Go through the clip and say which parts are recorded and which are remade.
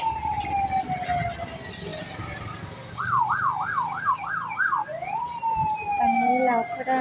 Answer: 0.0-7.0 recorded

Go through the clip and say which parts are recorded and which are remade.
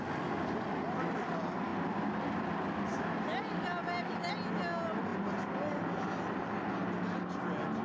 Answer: 0.0-7.8 recorded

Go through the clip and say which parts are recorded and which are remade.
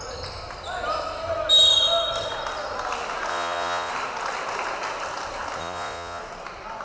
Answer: 0.0-3.3 recorded; 3.3-3.9 remade; 3.9-5.6 recorded; 5.6-6.2 remade; 6.2-6.8 recorded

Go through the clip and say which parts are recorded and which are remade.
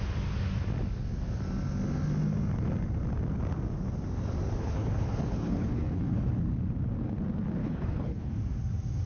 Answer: 0.0-4.6 recorded; 4.6-6.3 remade; 6.3-7.6 recorded; 7.6-8.3 remade; 8.3-9.1 recorded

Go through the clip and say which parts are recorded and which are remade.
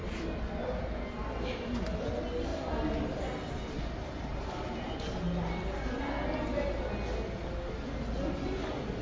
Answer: 0.0-0.5 remade; 0.5-9.0 recorded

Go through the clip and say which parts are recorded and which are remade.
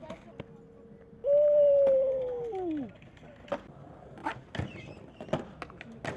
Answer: 0.0-6.2 recorded